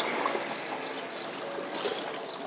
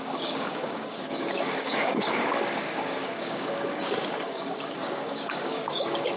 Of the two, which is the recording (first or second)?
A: first